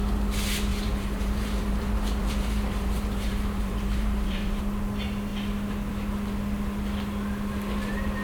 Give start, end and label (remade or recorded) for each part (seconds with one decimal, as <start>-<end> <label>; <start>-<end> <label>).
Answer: 0.0-0.7 recorded; 0.7-4.6 remade; 4.6-8.2 recorded